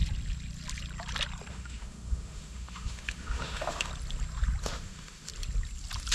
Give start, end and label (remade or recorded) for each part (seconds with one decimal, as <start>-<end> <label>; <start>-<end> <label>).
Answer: 0.0-1.5 recorded; 1.5-3.9 remade; 3.9-4.6 recorded; 4.6-5.3 remade; 5.3-6.1 recorded

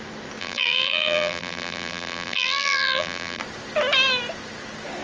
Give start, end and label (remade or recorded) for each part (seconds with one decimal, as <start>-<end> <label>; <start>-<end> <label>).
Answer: 0.0-0.4 recorded; 0.4-3.4 remade; 3.4-5.0 recorded

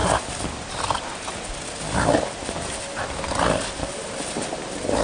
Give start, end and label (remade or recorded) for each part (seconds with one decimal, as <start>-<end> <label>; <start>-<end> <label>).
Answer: 0.0-5.0 recorded

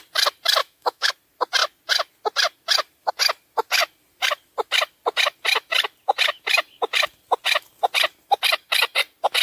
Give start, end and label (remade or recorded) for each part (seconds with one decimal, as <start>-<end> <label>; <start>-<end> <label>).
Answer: 0.0-0.6 recorded; 0.6-1.1 remade; 1.1-9.4 recorded

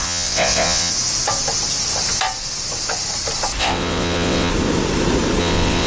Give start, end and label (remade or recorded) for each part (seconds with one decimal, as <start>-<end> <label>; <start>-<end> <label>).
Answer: 0.0-0.9 remade; 0.9-3.6 recorded; 3.6-4.5 remade; 4.5-5.4 recorded; 5.4-5.9 remade